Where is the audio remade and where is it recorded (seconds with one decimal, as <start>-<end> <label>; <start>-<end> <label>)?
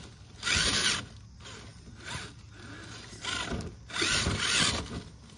0.0-5.4 recorded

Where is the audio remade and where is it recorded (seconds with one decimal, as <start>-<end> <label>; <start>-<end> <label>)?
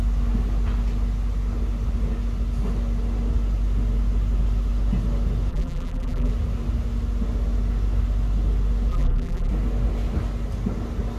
0.0-5.5 recorded; 5.5-6.3 remade; 6.3-8.9 recorded; 8.9-9.5 remade; 9.5-11.2 recorded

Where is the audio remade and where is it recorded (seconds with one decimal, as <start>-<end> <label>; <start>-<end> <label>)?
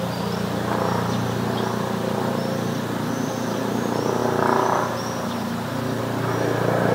0.0-6.9 remade